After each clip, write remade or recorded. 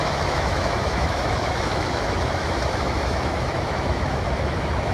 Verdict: remade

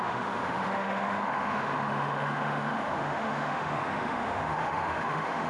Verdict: remade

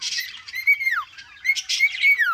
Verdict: recorded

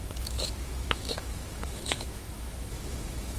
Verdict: remade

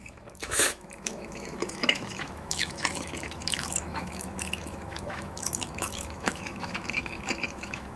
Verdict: remade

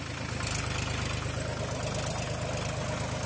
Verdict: recorded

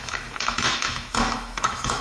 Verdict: remade